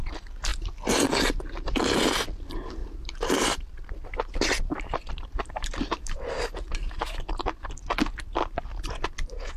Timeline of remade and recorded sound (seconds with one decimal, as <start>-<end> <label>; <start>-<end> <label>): 0.0-2.8 recorded; 2.8-7.7 remade; 7.7-8.4 recorded; 8.4-9.6 remade